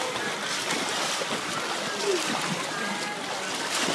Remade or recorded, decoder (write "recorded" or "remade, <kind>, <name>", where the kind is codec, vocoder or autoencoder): recorded